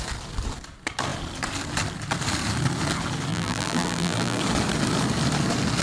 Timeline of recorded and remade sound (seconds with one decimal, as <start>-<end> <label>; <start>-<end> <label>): 0.0-3.3 recorded; 3.3-4.4 remade; 4.4-5.8 recorded